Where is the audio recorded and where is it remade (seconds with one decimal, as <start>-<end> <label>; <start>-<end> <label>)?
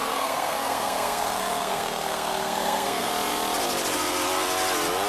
0.0-3.1 remade; 3.1-5.1 recorded